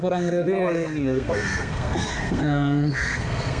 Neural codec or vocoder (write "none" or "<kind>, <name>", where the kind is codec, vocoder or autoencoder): codec, SNAC